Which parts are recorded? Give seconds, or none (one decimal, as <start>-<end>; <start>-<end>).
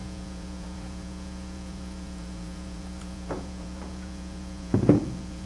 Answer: none